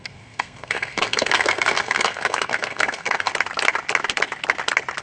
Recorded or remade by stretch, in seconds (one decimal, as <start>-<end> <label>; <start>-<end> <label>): 0.0-3.3 remade; 3.3-5.0 recorded